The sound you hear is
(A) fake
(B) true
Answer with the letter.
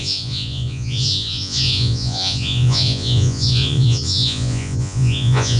A